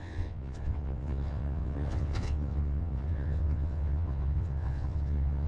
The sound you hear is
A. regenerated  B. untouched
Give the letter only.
A